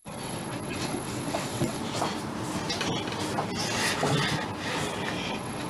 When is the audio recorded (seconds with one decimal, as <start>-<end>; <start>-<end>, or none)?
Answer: 1.8-5.2